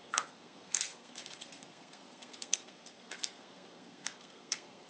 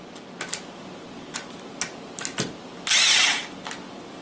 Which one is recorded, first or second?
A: second